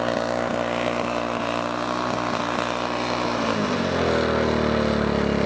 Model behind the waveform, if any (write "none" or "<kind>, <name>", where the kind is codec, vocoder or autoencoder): none